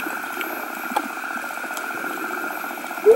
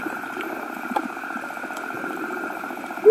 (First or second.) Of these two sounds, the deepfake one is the second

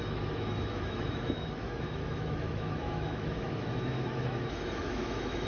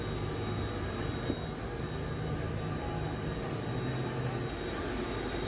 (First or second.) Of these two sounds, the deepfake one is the first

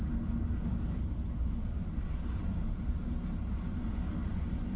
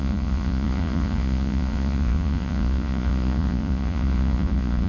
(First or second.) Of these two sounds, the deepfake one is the second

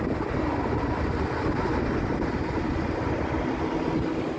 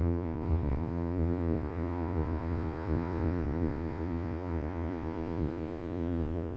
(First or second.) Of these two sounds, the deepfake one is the second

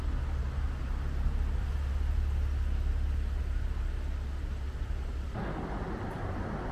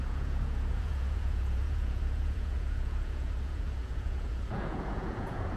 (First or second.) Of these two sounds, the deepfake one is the second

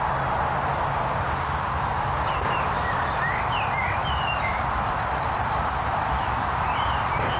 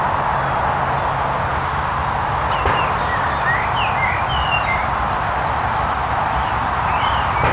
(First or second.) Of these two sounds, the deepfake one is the first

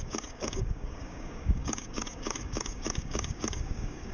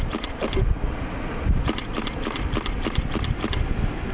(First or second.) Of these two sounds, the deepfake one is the first